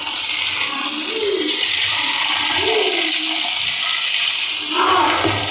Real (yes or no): yes